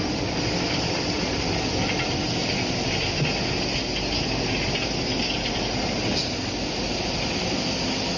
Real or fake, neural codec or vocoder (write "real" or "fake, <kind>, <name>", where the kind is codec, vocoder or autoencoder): real